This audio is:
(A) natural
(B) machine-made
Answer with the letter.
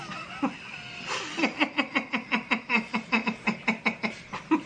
A